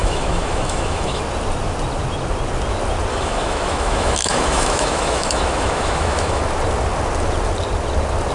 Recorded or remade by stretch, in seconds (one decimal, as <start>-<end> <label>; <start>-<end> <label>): 0.0-1.2 remade; 1.2-3.1 recorded; 3.1-6.4 remade; 6.4-8.3 recorded